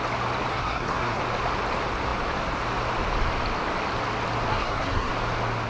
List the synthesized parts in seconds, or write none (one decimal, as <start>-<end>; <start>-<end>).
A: 0.5-1.2; 4.5-5.1